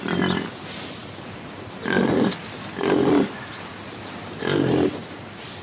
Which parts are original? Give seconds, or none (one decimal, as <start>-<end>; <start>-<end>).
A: 0.0-1.0; 4.4-5.0